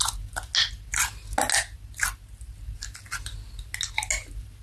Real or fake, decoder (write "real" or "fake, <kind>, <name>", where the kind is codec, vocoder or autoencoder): real